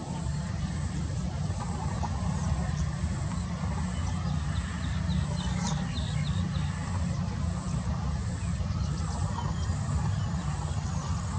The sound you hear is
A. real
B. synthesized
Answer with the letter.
A